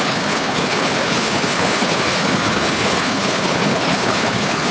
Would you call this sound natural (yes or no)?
no